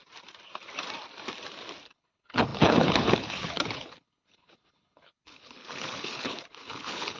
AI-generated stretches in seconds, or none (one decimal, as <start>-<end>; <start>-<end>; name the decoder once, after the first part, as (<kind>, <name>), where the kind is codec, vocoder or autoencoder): 1.8-7.2 (codec, HILCodec)